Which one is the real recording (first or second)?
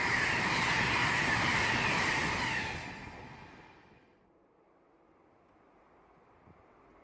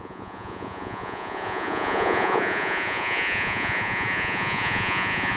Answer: first